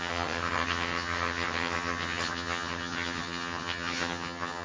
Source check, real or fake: fake